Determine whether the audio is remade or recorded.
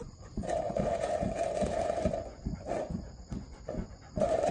remade